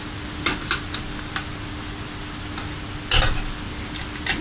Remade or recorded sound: recorded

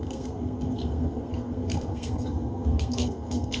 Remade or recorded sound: remade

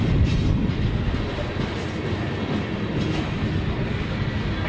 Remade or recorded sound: recorded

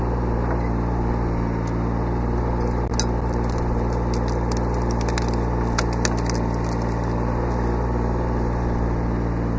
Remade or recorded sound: recorded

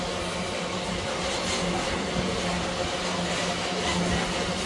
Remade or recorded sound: recorded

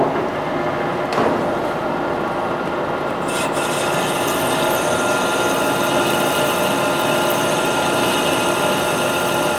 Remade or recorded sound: recorded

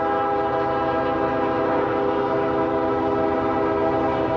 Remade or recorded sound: recorded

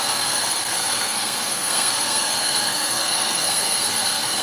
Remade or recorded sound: remade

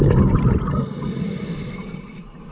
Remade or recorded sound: recorded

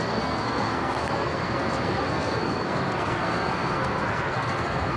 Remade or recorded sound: remade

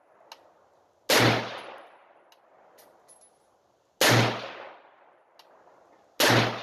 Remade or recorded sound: recorded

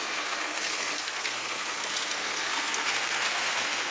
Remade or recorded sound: remade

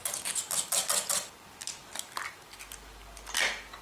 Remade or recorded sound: recorded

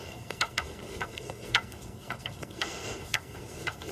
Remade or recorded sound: remade